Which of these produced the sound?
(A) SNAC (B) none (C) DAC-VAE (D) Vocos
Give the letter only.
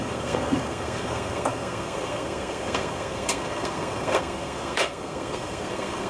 A